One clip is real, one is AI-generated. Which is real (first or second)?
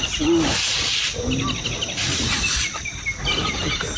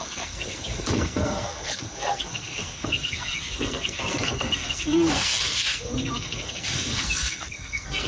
first